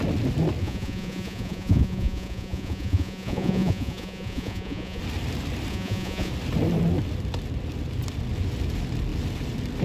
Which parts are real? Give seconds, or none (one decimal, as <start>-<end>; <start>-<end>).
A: 0.0-0.6; 5.0-5.7; 6.3-9.8